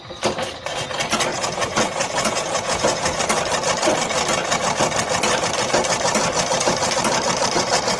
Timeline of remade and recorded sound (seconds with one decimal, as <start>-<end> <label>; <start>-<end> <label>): 0.0-1.3 recorded; 1.3-3.2 remade; 3.2-8.0 recorded

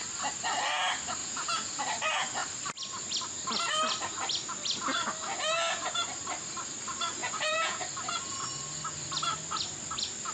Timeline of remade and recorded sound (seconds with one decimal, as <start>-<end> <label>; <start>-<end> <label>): 0.0-1.2 recorded; 1.2-1.8 remade; 1.8-7.2 recorded; 7.2-7.8 remade; 7.8-10.3 recorded

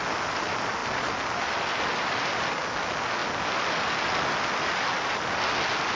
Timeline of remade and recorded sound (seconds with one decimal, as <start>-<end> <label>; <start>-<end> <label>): 0.0-5.9 recorded

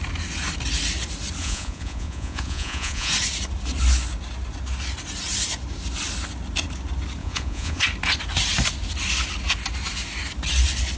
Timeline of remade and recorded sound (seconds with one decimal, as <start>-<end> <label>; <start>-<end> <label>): 0.0-1.4 recorded; 1.4-3.1 remade; 3.1-7.2 recorded; 7.2-7.8 remade; 7.8-11.0 recorded

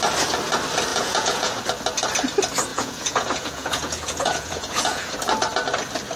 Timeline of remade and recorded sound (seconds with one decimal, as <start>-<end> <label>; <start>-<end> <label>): 0.0-0.9 recorded; 0.9-1.6 remade; 1.6-2.7 recorded; 2.7-5.1 remade; 5.1-6.2 recorded

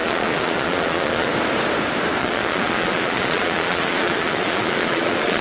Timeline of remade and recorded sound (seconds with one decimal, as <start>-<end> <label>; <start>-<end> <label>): 0.0-1.3 remade; 1.3-2.2 recorded; 2.2-5.4 remade